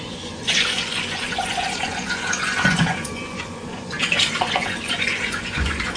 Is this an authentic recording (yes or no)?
no